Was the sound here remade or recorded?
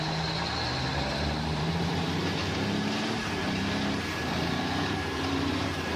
remade